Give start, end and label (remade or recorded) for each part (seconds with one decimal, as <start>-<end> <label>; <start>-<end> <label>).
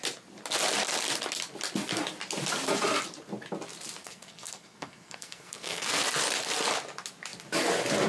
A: 0.0-4.0 recorded; 4.0-6.0 remade; 6.0-8.1 recorded